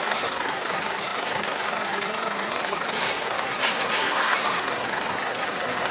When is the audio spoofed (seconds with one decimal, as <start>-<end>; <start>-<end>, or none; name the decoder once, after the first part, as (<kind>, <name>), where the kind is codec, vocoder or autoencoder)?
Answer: 0.0-5.9 (codec, SNAC)